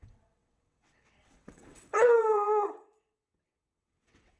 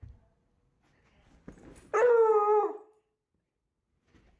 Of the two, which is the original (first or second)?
second